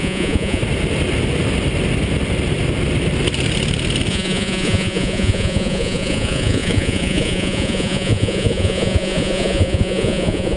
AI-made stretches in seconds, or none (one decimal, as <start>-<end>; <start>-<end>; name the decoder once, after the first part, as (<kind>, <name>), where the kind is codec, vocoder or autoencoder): 0.0-0.6 (vocoder, Vocos); 4.1-10.6